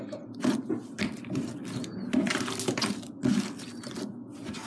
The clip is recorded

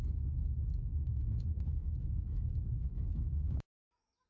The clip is remade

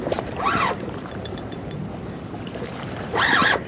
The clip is remade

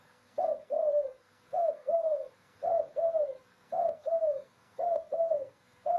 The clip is remade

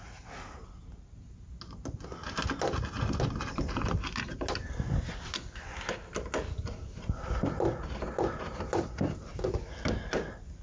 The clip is recorded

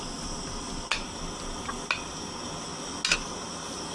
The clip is recorded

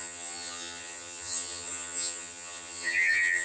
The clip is remade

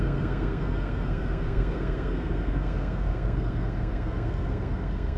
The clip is remade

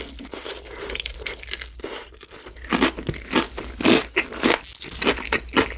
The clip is recorded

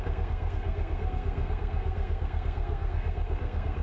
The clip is remade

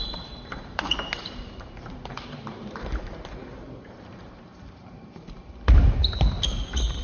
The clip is remade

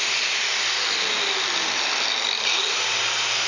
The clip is recorded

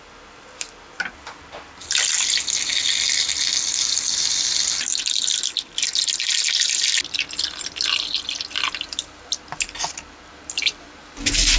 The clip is recorded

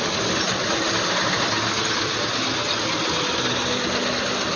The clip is recorded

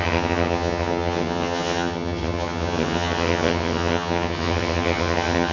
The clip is remade